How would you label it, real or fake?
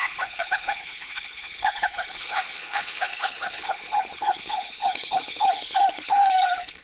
fake